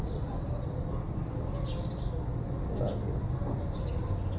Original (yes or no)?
yes